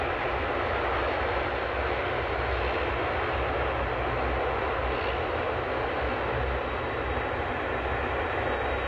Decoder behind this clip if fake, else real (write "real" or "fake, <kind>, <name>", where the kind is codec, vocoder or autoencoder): real